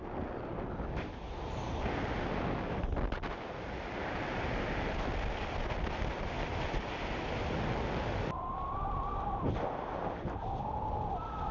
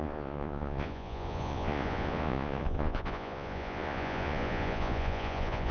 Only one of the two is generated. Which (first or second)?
second